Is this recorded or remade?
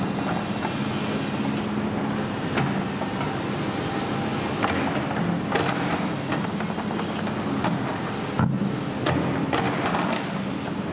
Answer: recorded